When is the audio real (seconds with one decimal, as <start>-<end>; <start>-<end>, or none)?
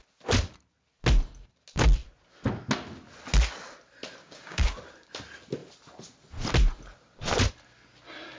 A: 0.0-4.2; 4.7-8.4